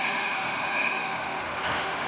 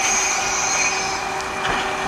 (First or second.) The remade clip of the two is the first